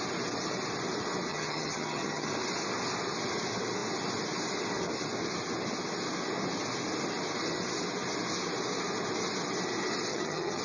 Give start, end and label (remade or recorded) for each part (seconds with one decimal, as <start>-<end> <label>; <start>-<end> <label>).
0.0-1.3 recorded; 1.3-2.3 remade; 2.3-10.1 recorded; 10.1-10.6 remade

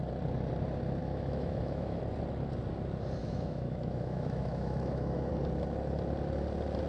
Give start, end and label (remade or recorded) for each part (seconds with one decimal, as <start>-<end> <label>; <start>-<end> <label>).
0.0-1.0 recorded; 1.0-2.0 remade; 2.0-3.2 recorded; 3.2-5.3 remade; 5.3-6.9 recorded

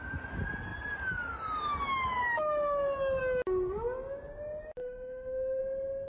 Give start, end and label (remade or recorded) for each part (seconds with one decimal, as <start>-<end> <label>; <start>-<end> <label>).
0.0-4.8 recorded; 4.8-5.6 remade; 5.6-6.1 recorded

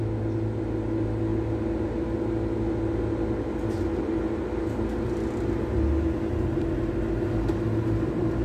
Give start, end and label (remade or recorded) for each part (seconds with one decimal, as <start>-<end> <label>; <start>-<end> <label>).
0.0-8.4 recorded

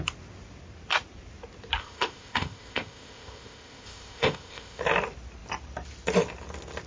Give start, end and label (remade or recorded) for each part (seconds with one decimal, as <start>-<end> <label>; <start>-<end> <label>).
0.0-1.8 recorded; 1.8-4.8 remade; 4.8-6.9 recorded

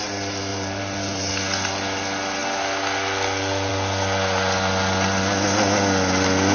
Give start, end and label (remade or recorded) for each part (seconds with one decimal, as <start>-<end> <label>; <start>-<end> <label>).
0.0-0.5 recorded; 0.5-1.3 remade; 1.3-6.5 recorded

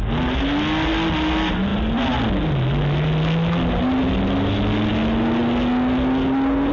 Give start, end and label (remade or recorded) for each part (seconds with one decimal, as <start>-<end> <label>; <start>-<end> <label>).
0.0-6.7 recorded

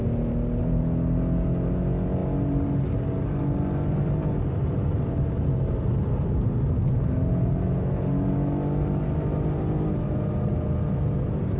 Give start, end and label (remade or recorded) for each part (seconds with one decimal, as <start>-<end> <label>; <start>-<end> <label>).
0.0-11.6 recorded